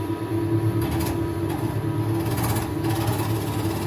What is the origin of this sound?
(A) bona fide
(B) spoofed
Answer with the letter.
A